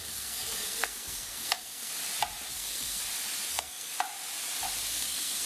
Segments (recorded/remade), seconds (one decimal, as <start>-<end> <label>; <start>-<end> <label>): 0.0-1.9 remade; 1.9-2.5 recorded; 2.5-3.0 remade; 3.0-3.5 recorded; 3.5-3.9 remade; 3.9-4.9 recorded; 4.9-5.5 remade